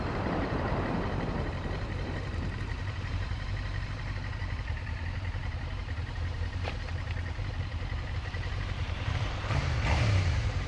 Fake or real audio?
fake